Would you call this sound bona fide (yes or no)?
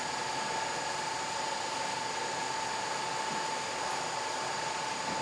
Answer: yes